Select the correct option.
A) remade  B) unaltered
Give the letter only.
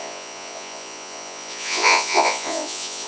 A